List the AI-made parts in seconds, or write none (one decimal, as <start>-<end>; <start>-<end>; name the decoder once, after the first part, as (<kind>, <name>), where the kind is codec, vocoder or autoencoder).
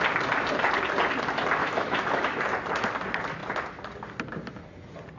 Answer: 1.6-2.4 (autoencoder, DAC-VAE)